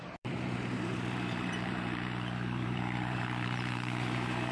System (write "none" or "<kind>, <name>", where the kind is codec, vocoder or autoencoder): vocoder, BigVGAN v2